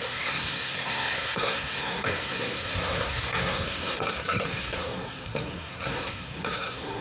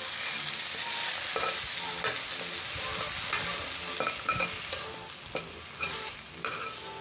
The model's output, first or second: first